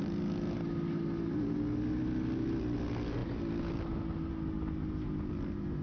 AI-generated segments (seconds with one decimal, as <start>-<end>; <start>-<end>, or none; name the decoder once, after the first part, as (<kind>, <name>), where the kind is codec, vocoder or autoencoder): none